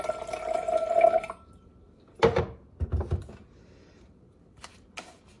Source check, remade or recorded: recorded